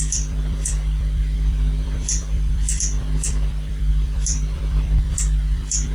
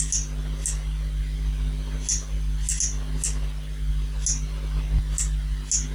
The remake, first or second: first